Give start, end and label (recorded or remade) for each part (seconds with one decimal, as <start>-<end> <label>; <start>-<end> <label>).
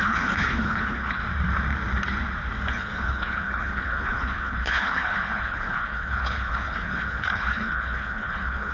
0.0-1.2 remade; 1.2-2.7 recorded; 2.7-8.7 remade